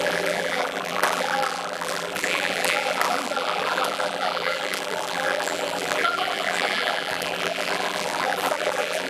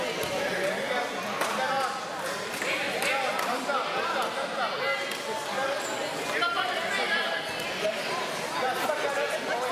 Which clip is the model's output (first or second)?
first